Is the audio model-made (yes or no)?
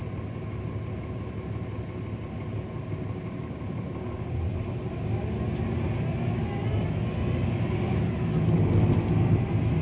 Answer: no